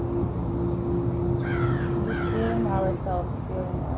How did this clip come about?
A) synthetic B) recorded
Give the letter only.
B